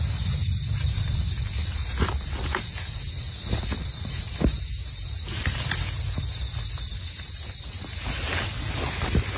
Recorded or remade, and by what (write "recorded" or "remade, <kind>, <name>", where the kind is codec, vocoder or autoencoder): recorded